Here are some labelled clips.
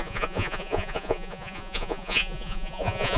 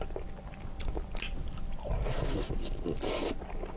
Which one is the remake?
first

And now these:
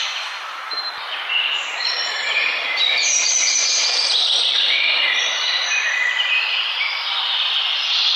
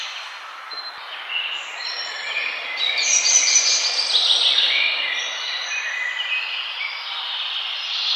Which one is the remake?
first